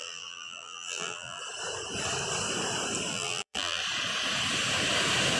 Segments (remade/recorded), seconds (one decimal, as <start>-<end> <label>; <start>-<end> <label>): 0.0-1.4 remade; 1.4-3.1 recorded; 3.1-3.8 remade; 3.8-5.4 recorded